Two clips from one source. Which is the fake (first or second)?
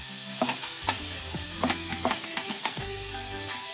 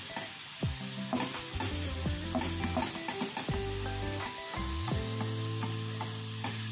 first